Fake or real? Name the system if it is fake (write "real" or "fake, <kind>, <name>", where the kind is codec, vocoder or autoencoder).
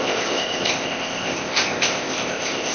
fake, codec, ZipCodec